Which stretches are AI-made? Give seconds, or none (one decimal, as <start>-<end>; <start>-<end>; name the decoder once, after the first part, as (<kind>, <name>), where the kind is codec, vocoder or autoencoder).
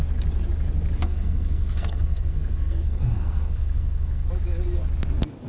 1.0-4.3 (codec, SNAC)